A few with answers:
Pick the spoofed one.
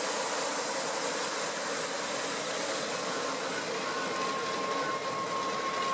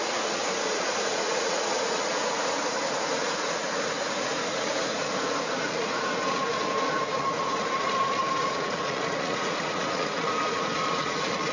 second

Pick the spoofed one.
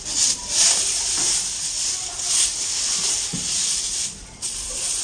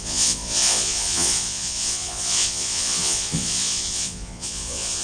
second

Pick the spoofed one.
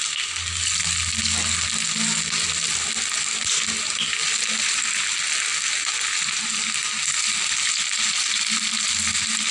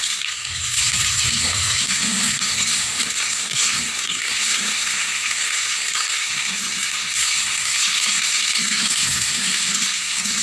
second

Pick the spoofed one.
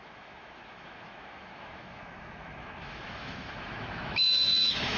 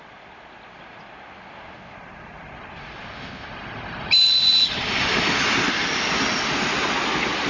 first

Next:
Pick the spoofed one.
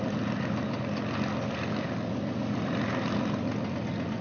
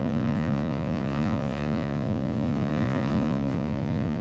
second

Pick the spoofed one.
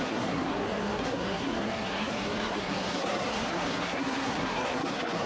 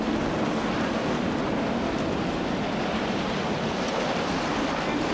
first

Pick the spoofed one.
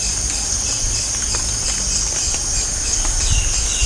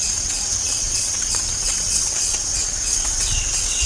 second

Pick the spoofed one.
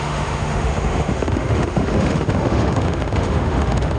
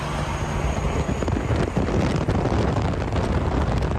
first